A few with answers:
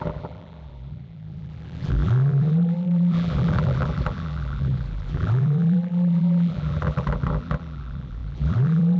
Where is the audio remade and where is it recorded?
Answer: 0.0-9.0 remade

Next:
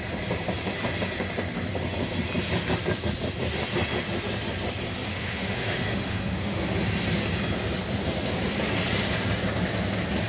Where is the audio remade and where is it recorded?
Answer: 0.0-5.1 recorded; 5.1-6.6 remade; 6.6-10.3 recorded

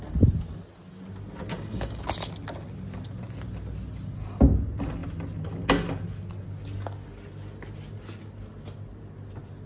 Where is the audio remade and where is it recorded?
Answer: 0.0-1.5 recorded; 1.5-2.0 remade; 2.0-9.7 recorded